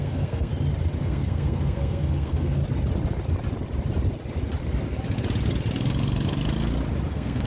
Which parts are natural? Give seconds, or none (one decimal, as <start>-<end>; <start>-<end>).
0.5-1.0; 2.6-7.1